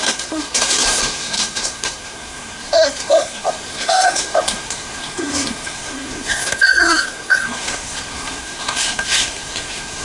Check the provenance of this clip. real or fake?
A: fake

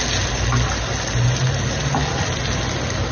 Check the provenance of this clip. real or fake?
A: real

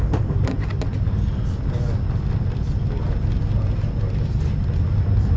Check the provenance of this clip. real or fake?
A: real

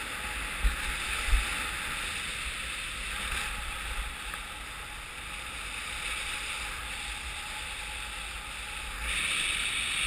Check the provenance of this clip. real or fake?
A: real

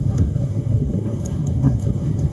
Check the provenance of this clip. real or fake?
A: fake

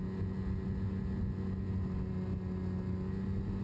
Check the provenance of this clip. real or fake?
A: real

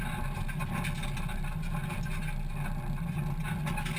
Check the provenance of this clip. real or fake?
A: real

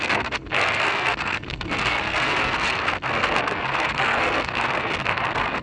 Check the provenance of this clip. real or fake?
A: fake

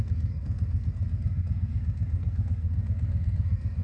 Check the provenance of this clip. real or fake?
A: fake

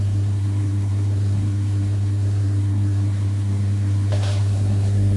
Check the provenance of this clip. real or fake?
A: fake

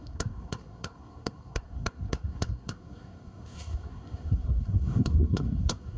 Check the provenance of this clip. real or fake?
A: fake